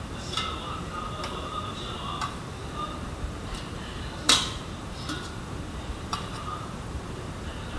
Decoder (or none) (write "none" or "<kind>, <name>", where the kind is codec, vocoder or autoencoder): vocoder, BigVGAN v2